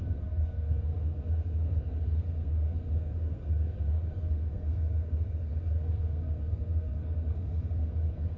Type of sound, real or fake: fake